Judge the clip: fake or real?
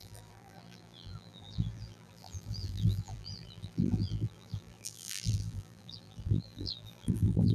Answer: fake